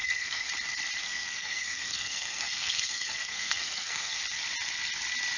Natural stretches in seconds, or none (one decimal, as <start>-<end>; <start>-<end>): 0.5-1.0; 4.2-5.4

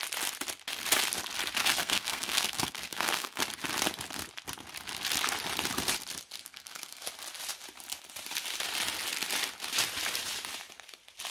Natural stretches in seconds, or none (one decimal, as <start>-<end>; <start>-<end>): 0.0-1.6; 3.4-6.4; 7.1-11.3